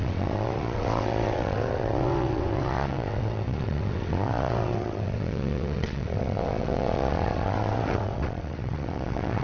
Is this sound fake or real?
fake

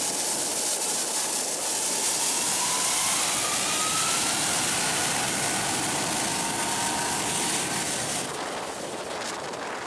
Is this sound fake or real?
real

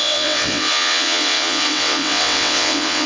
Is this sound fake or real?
fake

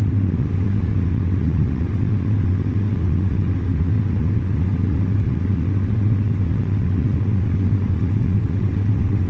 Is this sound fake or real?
fake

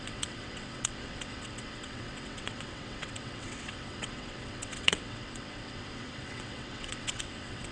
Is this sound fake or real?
fake